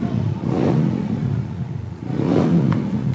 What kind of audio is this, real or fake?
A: fake